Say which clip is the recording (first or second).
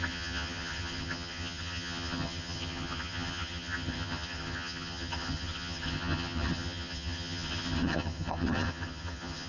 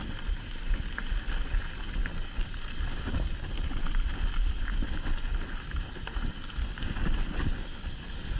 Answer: second